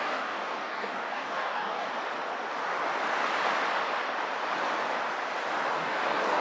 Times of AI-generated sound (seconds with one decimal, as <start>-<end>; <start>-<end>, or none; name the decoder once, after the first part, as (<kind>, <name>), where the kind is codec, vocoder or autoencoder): 0.0-1.9 (codec, DAC); 5.7-6.4